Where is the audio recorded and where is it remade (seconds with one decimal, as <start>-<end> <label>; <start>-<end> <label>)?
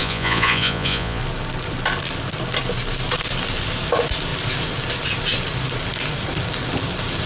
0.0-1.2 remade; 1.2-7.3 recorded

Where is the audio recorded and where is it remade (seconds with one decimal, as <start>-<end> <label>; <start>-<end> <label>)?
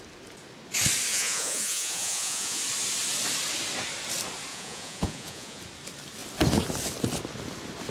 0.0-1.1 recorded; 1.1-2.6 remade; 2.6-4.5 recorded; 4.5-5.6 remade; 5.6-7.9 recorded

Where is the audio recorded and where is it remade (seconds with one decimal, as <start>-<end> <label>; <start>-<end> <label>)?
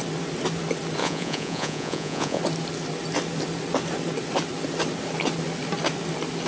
0.0-1.0 recorded; 1.0-2.4 remade; 2.4-6.5 recorded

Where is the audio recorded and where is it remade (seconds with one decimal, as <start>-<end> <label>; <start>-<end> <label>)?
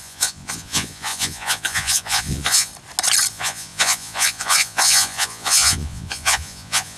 0.0-2.7 remade; 2.7-3.3 recorded; 3.3-7.0 remade